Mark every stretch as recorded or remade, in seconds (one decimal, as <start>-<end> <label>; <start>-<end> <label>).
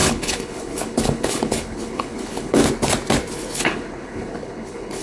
0.0-2.6 remade; 2.6-3.3 recorded; 3.3-5.0 remade